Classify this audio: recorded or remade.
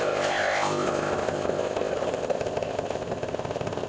remade